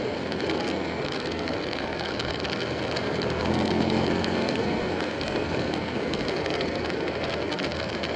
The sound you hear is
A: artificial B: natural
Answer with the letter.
A